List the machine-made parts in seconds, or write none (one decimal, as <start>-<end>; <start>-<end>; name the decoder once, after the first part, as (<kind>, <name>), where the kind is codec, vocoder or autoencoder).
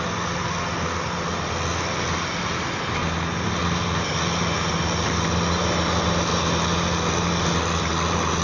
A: none